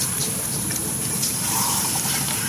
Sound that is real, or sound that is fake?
fake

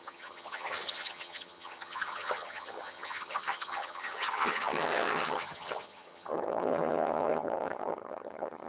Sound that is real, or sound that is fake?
fake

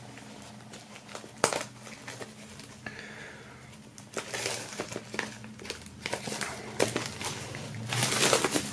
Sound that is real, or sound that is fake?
real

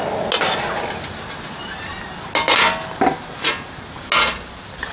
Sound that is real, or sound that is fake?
real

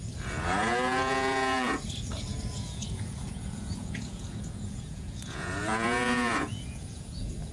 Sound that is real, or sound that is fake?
fake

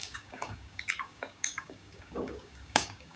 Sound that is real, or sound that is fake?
fake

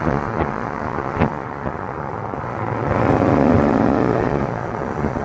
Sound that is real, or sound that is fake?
fake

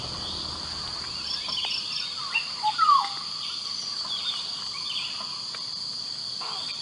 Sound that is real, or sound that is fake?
real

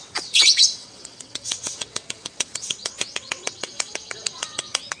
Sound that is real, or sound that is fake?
fake